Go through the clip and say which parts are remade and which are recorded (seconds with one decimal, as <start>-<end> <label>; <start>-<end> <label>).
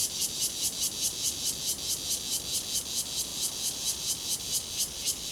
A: 0.0-0.8 remade; 0.8-5.3 recorded